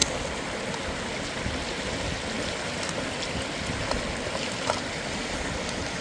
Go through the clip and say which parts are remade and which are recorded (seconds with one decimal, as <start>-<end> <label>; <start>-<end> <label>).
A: 0.0-6.0 recorded